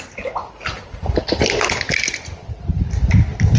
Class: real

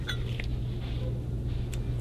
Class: real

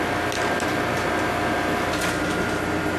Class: real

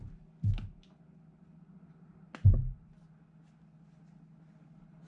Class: real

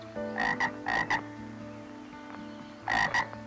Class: real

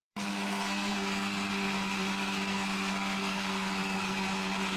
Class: fake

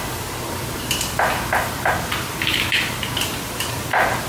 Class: real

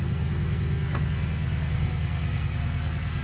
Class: fake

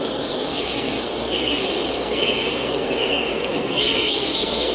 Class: fake